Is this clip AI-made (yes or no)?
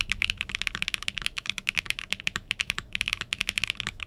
yes